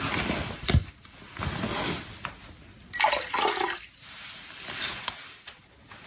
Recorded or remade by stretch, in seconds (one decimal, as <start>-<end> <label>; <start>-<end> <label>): 0.0-6.1 recorded